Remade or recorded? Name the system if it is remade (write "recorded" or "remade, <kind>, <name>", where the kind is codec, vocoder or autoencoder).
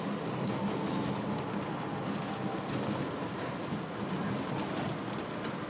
recorded